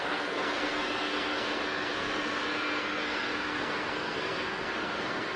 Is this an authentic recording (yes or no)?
no